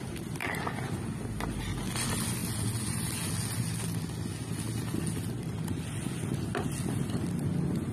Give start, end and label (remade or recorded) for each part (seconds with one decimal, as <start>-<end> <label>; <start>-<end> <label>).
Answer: 0.0-7.9 recorded